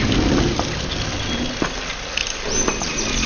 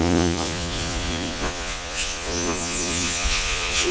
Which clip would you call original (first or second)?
first